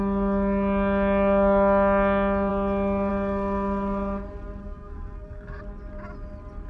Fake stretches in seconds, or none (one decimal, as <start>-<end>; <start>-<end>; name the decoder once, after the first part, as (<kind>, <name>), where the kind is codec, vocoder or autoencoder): 4.6-5.6 (codec, SNAC)